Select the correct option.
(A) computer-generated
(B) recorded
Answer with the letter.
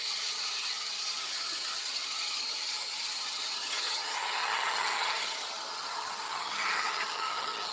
A